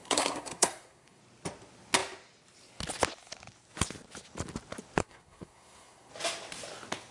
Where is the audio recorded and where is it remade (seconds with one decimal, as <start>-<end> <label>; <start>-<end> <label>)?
0.0-1.2 remade; 1.2-5.0 recorded; 5.0-6.1 remade; 6.1-7.1 recorded